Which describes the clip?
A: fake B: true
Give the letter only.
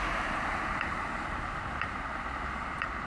B